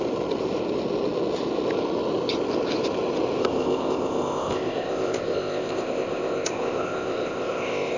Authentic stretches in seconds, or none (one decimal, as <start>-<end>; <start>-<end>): 0.0-3.4

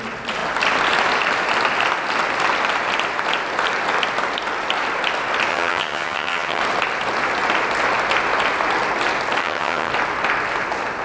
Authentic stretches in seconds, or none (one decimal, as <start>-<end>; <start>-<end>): 0.0-5.5; 6.6-9.4; 9.9-11.0

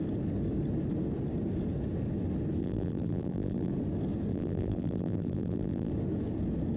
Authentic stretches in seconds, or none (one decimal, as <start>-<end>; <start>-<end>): 0.0-2.6; 3.7-4.3; 5.9-6.8

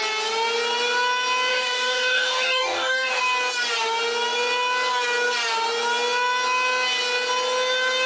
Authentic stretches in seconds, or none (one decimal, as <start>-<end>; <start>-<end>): 0.0-1.5; 3.2-8.1